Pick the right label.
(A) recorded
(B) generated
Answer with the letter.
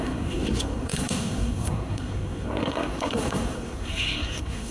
B